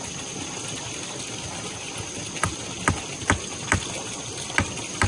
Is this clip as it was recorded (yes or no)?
yes